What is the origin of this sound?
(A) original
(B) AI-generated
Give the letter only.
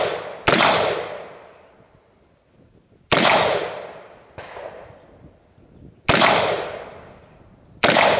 A